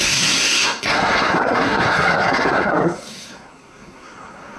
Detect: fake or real fake